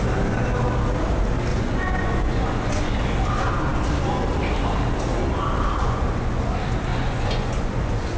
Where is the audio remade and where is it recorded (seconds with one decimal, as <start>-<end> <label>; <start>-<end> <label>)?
0.0-1.5 recorded; 1.5-3.0 remade; 3.0-5.8 recorded; 5.8-6.5 remade; 6.5-6.9 recorded; 6.9-8.2 remade